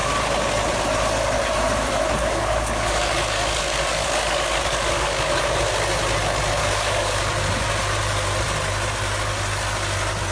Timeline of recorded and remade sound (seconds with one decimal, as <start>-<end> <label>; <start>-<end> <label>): 0.0-2.2 recorded; 2.2-5.4 remade; 5.4-6.6 recorded; 6.6-7.2 remade; 7.2-10.3 recorded